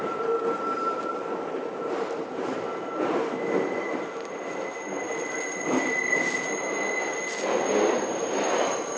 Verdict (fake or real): real